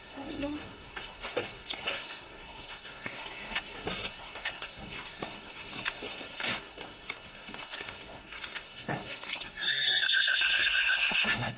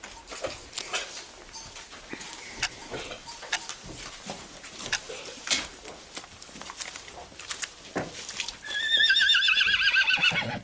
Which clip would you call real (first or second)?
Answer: second